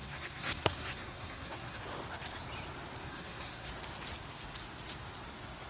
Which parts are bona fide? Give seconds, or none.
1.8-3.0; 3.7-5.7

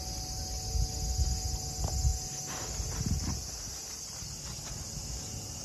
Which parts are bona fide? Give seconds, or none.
0.0-5.6

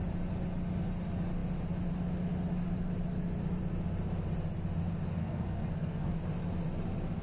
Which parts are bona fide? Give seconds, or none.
0.0-5.2; 6.2-7.2